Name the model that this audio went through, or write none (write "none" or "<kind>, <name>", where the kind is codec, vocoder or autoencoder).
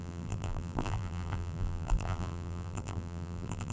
vocoder, BigVGAN v2